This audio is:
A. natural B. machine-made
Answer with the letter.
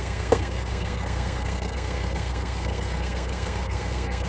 B